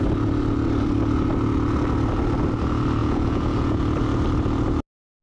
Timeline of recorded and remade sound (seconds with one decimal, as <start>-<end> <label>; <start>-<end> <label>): 0.0-3.0 recorded; 3.0-3.8 remade; 3.8-5.2 recorded